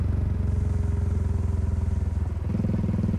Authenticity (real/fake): real